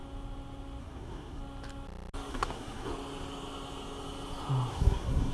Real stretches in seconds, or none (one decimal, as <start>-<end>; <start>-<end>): 0.0-0.8; 1.4-2.3; 2.9-4.7